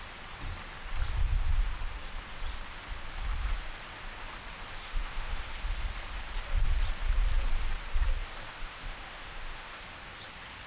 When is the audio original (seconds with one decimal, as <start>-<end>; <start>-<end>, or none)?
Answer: 0.0-4.8; 5.4-8.5; 9.8-10.7